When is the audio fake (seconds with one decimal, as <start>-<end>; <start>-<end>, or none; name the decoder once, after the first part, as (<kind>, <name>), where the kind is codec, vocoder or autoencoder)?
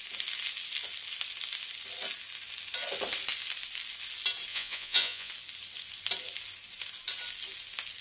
4.5-5.3 (vocoder, Vocos)